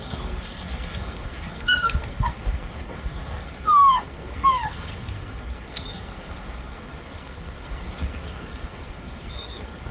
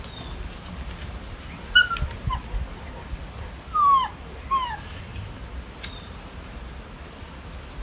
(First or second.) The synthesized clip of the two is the first